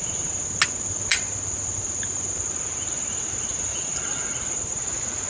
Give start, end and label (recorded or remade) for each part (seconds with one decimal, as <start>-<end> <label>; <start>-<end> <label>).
0.0-3.7 recorded; 3.7-4.2 remade; 4.2-5.3 recorded